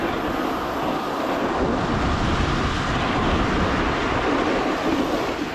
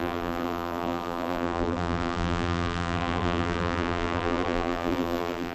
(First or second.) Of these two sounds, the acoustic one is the first